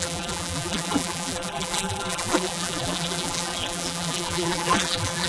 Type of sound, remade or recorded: remade